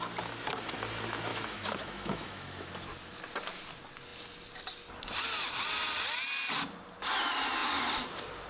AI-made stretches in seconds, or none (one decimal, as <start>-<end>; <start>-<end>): 1.3-2.7